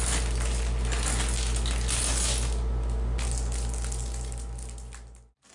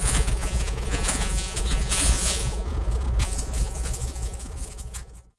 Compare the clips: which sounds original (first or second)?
first